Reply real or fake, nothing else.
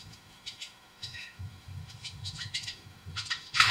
fake